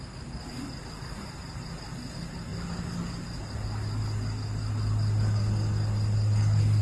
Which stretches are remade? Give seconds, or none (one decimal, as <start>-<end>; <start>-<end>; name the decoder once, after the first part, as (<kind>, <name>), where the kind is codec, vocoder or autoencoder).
none